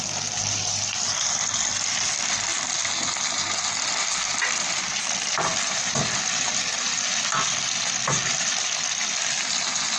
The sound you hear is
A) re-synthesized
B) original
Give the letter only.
B